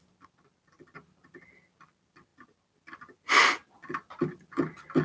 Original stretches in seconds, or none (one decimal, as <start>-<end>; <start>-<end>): 0.0-5.0